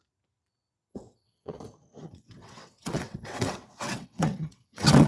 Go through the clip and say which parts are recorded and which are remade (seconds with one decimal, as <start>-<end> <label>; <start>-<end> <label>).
0.0-0.9 recorded; 0.9-1.6 remade; 1.6-2.0 recorded; 2.0-5.1 remade